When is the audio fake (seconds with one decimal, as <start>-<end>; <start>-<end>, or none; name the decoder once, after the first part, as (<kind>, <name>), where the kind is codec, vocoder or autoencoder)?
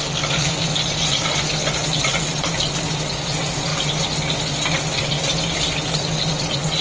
none